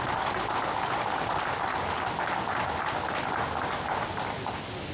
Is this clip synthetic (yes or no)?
no